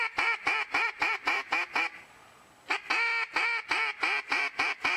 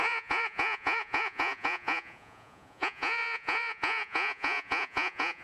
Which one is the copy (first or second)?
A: second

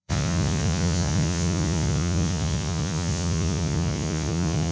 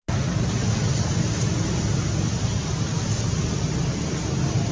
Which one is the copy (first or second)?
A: first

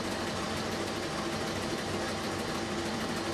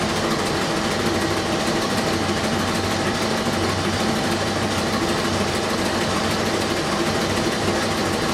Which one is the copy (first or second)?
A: second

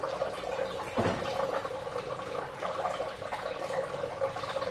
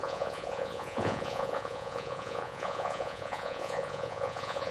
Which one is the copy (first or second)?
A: second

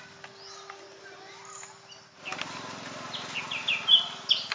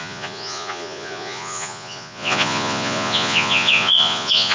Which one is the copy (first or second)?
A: second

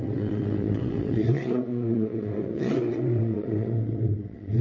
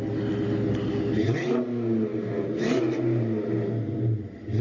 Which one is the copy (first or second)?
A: first